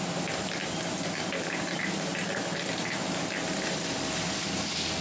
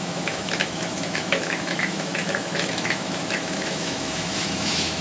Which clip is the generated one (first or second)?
second